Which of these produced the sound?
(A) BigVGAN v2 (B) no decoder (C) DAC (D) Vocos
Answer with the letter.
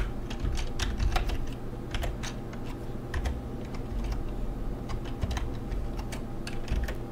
B